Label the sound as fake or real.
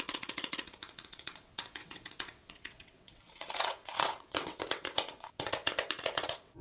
fake